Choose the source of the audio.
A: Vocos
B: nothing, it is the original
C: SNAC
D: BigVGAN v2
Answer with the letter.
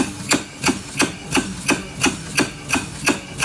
B